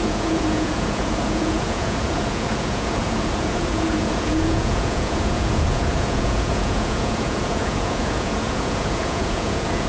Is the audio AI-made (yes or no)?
yes